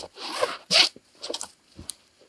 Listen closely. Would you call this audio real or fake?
real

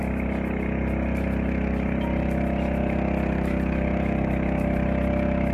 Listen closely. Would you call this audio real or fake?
real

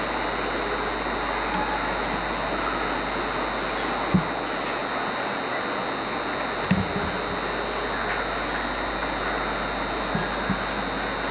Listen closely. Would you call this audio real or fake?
real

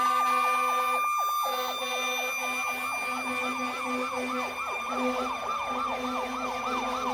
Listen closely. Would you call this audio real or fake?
real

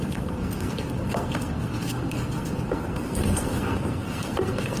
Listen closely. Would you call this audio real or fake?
fake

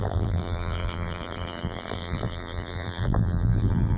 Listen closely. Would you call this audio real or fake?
fake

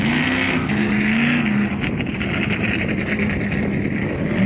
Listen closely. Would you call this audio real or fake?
real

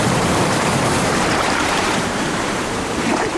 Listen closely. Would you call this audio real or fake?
fake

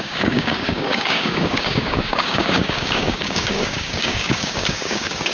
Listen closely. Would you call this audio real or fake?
fake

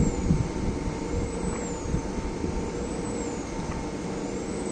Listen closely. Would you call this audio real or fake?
real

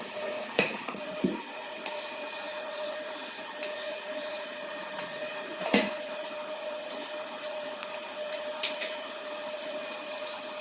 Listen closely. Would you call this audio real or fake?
fake